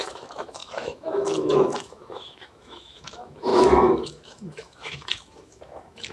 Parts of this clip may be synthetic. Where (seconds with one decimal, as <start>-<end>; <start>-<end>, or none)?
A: 0.0-6.1